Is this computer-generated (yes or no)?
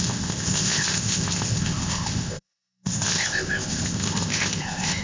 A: yes